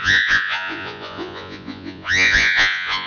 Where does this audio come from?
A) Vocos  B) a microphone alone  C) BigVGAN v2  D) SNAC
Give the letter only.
A